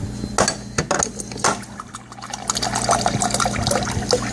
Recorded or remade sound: recorded